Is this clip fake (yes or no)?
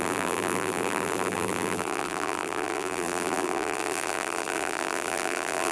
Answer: yes